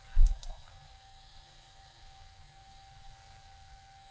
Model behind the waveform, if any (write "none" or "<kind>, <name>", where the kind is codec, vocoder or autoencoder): codec, SNAC